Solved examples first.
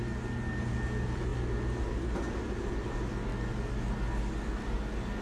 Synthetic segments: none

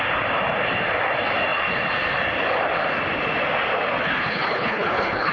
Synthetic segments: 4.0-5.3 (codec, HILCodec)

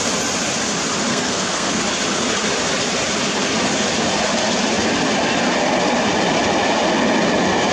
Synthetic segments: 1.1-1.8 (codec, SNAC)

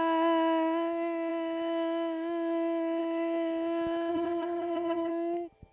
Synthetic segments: 4.1-5.1 (vocoder, HiFi-GAN)